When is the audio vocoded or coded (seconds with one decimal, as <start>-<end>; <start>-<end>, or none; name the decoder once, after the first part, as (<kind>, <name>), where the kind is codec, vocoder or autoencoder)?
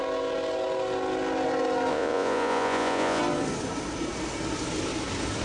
1.9-3.2 (vocoder, Vocos)